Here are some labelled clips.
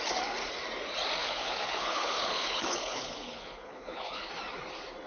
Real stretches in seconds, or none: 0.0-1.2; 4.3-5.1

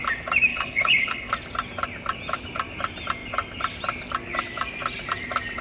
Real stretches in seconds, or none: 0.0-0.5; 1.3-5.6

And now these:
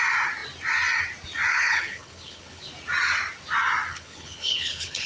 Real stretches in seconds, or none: 0.0-1.5; 2.7-3.9

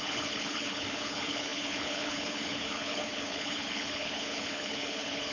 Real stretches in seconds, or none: none